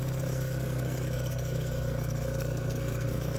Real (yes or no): no